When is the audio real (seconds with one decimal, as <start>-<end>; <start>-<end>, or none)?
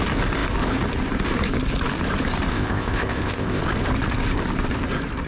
0.0-2.5; 3.6-5.3